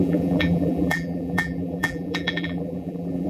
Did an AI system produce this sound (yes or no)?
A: yes